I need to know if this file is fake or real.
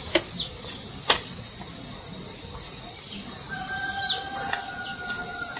real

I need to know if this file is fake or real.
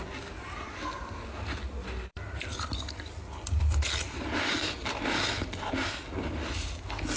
real